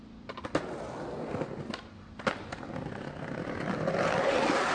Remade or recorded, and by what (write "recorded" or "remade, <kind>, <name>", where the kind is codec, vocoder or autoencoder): recorded